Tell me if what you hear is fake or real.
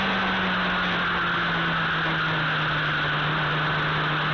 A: real